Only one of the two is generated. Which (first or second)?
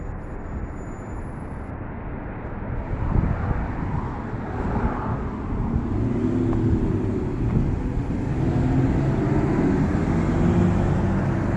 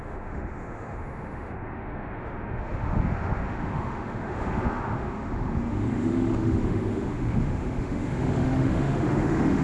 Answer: second